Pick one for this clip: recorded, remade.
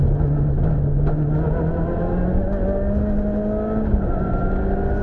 recorded